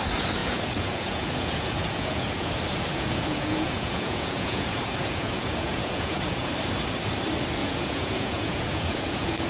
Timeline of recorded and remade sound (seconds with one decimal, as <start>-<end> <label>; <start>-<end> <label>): 0.0-0.4 recorded; 0.4-2.5 remade; 2.5-2.9 recorded; 2.9-6.5 remade; 6.5-7.6 recorded; 7.6-9.5 remade